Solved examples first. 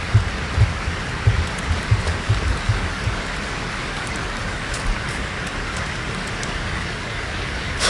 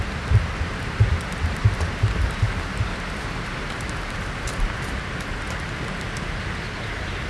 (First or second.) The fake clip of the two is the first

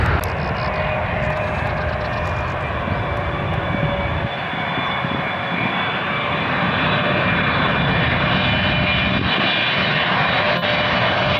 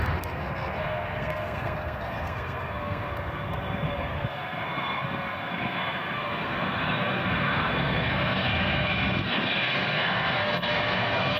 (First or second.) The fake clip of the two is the second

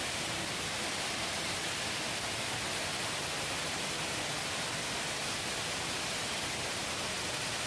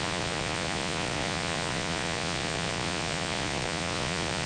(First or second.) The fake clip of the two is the second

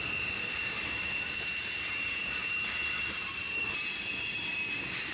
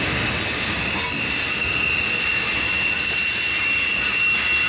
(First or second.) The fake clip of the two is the first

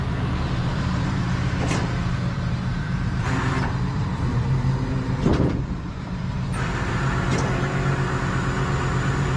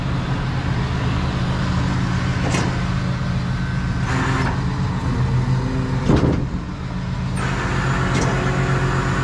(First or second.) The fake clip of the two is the first